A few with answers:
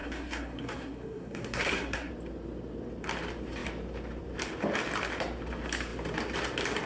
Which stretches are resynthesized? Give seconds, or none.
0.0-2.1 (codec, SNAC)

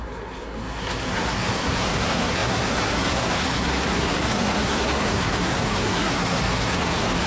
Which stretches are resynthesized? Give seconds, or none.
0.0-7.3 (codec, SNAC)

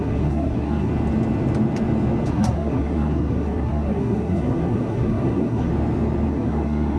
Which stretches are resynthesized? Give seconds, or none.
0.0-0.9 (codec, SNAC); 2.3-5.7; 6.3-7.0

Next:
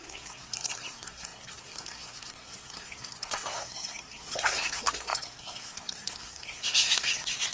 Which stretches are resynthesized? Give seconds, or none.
0.0-7.5 (codec, SNAC)